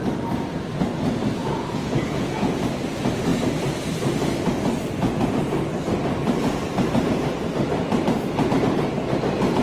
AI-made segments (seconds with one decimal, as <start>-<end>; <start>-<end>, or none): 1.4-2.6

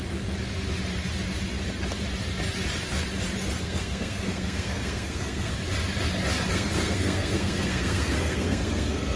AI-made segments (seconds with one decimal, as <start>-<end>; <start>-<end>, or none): 3.6-5.5; 6.5-9.2

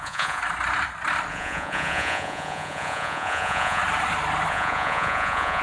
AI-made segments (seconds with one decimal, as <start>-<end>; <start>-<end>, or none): 0.0-0.4; 1.3-3.8; 4.5-5.6